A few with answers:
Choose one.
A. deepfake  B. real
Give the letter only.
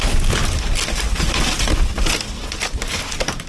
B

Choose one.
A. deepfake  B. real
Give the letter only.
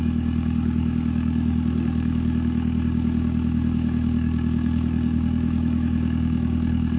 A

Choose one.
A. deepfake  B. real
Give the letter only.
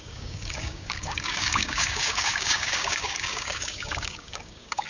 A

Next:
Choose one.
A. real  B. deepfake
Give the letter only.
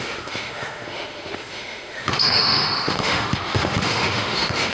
B